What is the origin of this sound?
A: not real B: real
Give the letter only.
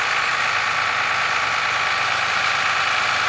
B